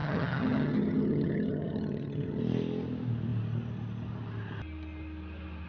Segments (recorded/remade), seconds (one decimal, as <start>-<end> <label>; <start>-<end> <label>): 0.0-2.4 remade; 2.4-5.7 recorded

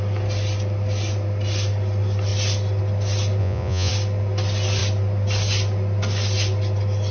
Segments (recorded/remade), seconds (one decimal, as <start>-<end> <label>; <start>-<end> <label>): 0.0-3.4 recorded; 3.4-3.9 remade; 3.9-7.1 recorded

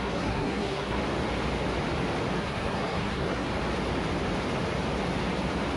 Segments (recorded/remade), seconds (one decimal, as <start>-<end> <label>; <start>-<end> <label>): 0.0-1.0 remade; 1.0-2.4 recorded; 2.4-3.5 remade; 3.5-5.8 recorded

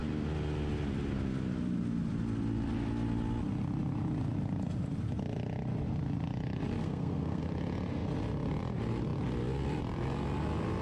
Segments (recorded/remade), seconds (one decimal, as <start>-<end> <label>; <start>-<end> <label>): 0.0-6.8 recorded; 6.8-7.4 remade; 7.4-10.8 recorded